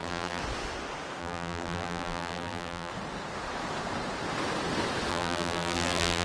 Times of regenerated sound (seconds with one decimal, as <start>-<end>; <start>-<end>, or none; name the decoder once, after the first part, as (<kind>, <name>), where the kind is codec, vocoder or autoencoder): 0.0-0.4 (vocoder, BigVGAN v2); 1.2-2.9; 5.1-6.2